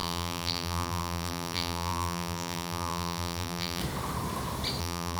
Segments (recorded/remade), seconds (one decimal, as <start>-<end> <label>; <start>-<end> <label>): 0.0-3.8 remade; 3.8-4.8 recorded; 4.8-5.2 remade